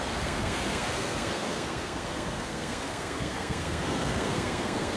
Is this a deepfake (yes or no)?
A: yes